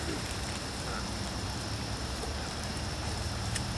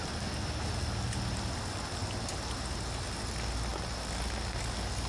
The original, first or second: second